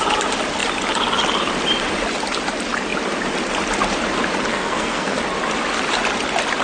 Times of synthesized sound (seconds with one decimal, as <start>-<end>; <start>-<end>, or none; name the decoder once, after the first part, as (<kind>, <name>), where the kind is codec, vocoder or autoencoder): 4.5-5.2 (codec, SNAC)